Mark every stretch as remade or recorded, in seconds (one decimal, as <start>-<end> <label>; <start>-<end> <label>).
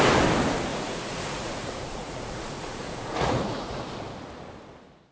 0.0-0.7 recorded; 0.7-3.8 remade; 3.8-5.1 recorded